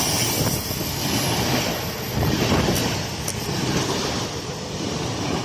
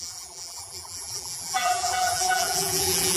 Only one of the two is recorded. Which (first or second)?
first